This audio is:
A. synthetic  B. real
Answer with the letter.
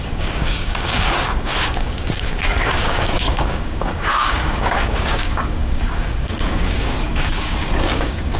A